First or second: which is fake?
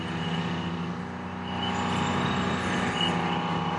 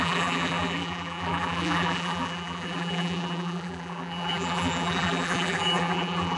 second